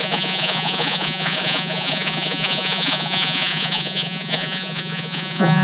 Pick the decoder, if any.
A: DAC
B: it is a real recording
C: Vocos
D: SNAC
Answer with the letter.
C